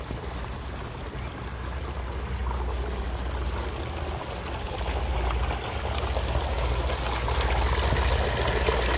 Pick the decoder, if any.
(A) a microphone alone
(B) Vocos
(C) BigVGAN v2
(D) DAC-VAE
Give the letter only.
A